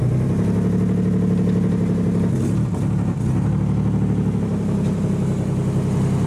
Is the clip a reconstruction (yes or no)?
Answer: no